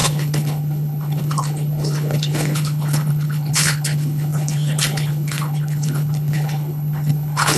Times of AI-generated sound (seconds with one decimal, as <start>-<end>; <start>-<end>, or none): 0.0-7.6